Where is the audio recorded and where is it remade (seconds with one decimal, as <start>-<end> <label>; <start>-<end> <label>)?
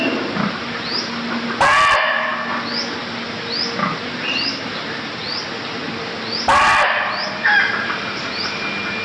0.0-9.0 recorded